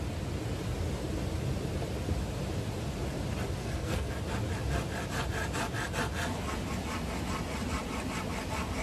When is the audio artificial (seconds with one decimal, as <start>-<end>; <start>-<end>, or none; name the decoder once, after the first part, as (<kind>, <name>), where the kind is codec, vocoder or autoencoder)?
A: 3.6-4.1 (codec, SNAC)